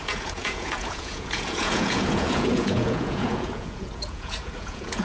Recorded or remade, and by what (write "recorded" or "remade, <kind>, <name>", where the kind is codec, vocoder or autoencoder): remade, vocoder, Vocos